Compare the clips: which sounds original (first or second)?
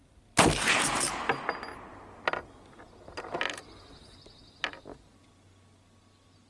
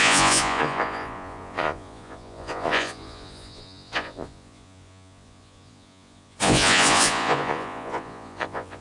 first